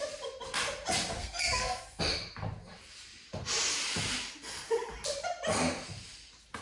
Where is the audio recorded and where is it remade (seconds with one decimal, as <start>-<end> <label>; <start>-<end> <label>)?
0.0-1.2 recorded; 1.2-2.0 remade; 2.0-6.6 recorded